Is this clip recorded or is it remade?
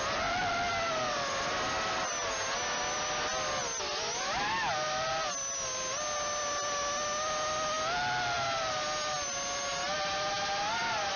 recorded